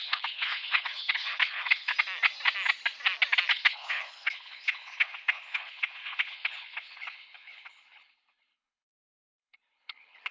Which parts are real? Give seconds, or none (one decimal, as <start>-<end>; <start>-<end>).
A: 1.9-3.5

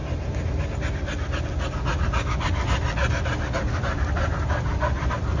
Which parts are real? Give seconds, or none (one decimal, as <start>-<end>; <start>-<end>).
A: 0.0-5.4